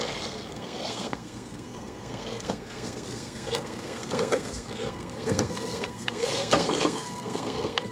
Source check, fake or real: fake